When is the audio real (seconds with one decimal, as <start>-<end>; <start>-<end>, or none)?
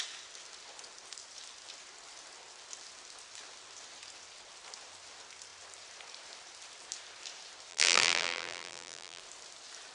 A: 0.0-7.7; 9.2-9.9